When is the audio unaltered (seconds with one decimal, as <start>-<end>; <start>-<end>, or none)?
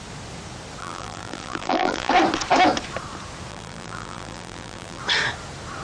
0.0-0.8; 2.1-3.5; 5.0-5.8